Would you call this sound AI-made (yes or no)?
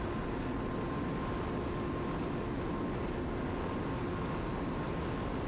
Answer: no